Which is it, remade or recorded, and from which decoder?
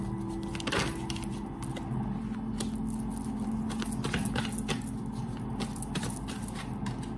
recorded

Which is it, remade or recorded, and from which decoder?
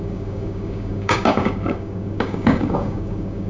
remade, codec, DAC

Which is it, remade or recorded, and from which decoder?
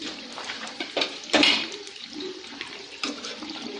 remade, vocoder, BigVGAN v2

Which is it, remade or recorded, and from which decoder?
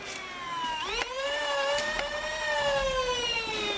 recorded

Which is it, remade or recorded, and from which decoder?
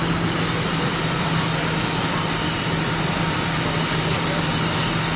recorded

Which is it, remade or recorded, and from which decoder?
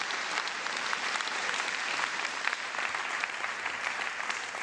remade, vocoder, BigVGAN v2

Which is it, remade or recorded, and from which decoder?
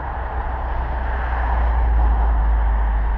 recorded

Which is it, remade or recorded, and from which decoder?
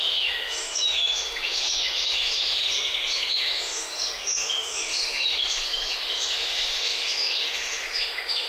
remade, autoencoder, DAC-VAE